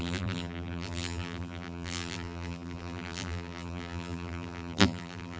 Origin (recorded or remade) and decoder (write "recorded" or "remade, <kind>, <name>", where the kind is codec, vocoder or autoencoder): remade, vocoder, BigVGAN v2